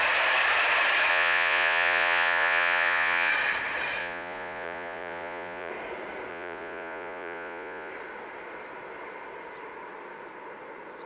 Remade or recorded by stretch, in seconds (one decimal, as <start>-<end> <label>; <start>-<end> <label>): 0.0-1.1 recorded; 1.1-3.3 remade; 3.3-4.0 recorded; 4.0-5.7 remade; 5.7-6.3 recorded; 6.3-7.9 remade; 7.9-11.1 recorded